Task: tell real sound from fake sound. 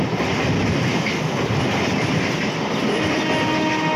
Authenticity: real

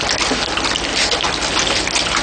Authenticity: real